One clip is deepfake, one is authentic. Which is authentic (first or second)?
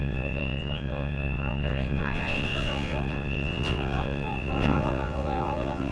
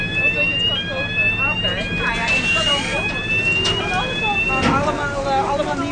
second